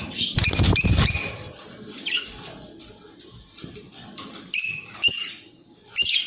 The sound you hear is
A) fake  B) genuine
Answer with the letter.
B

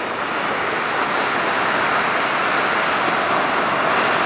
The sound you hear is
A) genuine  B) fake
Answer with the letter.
A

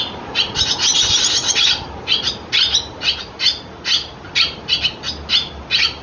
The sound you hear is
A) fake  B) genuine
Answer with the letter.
B